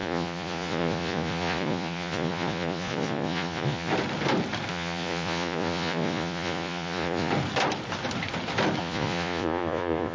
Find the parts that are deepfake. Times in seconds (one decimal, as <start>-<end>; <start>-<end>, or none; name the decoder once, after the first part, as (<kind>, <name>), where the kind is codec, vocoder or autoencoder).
0.0-3.9 (vocoder, Vocos); 4.7-7.3; 8.8-10.1